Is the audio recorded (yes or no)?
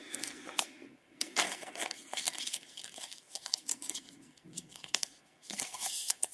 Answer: no